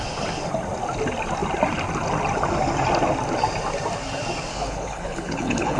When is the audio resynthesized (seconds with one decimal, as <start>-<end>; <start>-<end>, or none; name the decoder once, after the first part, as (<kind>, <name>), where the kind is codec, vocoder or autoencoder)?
4.5-5.8 (codec, HILCodec)